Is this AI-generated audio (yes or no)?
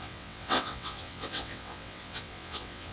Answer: yes